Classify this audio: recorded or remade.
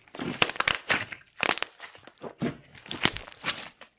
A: remade